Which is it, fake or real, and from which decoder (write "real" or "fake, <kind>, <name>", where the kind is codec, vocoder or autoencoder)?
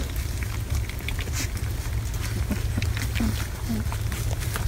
real